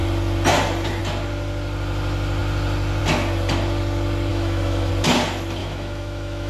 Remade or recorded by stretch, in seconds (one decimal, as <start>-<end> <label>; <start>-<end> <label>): 0.0-4.3 recorded; 4.3-4.9 remade; 4.9-5.6 recorded; 5.6-6.5 remade